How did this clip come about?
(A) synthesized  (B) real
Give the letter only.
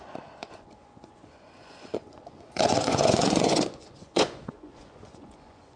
A